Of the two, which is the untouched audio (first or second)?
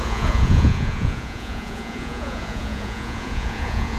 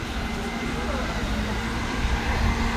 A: second